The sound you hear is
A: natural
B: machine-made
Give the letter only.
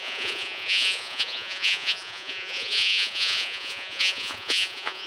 B